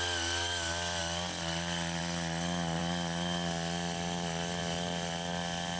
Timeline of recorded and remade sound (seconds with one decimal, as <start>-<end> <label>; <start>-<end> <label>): 0.0-5.8 recorded